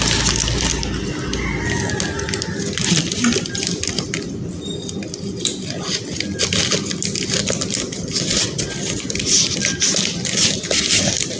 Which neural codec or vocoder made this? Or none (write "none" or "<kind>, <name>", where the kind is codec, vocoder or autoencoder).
none